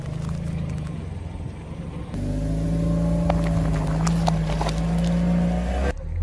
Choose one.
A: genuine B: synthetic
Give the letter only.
A